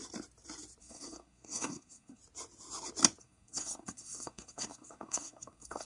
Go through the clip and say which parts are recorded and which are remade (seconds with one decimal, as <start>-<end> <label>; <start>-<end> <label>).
0.0-0.8 recorded; 0.8-2.2 remade; 2.2-3.2 recorded; 3.2-5.9 remade